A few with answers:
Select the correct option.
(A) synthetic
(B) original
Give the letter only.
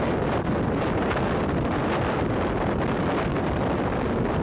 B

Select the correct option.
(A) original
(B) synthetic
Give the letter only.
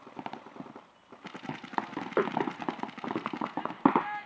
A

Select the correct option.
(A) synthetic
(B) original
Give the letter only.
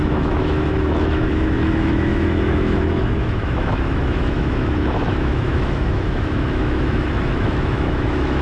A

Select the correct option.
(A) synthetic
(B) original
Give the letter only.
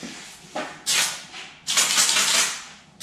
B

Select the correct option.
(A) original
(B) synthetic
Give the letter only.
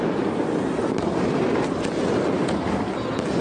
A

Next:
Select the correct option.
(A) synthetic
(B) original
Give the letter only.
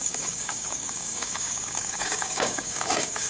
A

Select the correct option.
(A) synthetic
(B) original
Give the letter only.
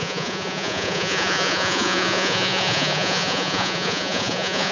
A